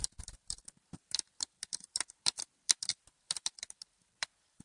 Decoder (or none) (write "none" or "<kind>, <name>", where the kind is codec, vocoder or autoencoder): vocoder, BigVGAN v2